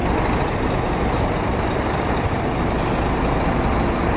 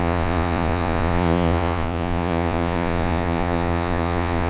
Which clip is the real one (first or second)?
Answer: first